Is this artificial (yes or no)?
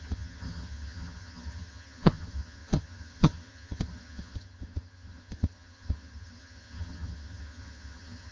yes